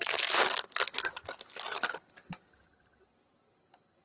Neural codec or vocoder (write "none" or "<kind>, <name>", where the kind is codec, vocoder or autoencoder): none